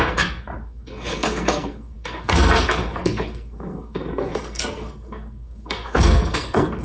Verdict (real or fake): fake